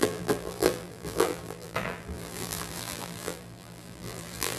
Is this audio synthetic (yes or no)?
yes